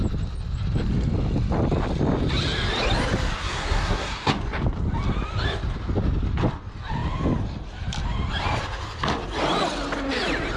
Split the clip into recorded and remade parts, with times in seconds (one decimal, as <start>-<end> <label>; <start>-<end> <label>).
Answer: 0.0-3.4 recorded; 3.4-4.3 remade; 4.3-10.6 recorded

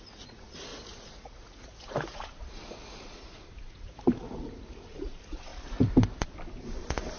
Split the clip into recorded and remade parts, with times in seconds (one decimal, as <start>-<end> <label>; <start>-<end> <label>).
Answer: 0.0-5.5 remade; 5.5-6.6 recorded; 6.6-7.2 remade

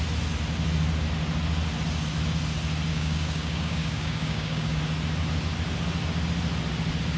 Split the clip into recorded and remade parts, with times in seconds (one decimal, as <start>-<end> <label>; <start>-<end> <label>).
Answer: 0.0-2.9 recorded; 2.9-4.8 remade; 4.8-7.2 recorded

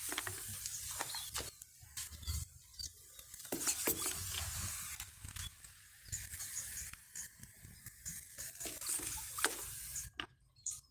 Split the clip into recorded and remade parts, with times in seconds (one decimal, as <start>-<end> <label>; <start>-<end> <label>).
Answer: 0.0-10.9 recorded

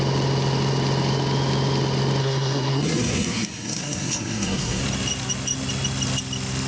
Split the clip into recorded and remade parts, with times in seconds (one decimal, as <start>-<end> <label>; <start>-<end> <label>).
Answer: 0.0-2.2 recorded; 2.2-4.8 remade; 4.8-6.7 recorded

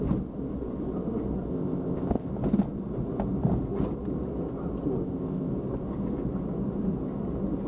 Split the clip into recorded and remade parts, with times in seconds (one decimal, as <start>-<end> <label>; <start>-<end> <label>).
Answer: 0.0-1.5 recorded; 1.5-2.3 remade; 2.3-5.0 recorded; 5.0-5.5 remade; 5.5-7.7 recorded

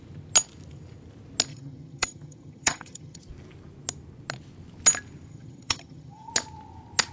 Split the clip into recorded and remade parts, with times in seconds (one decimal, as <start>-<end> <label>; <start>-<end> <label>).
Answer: 0.0-1.5 recorded; 1.5-3.3 remade; 3.3-5.3 recorded; 5.3-6.3 remade; 6.3-7.1 recorded